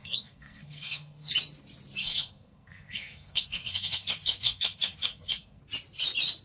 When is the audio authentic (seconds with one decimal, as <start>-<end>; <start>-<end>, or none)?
1.3-2.0; 5.6-6.4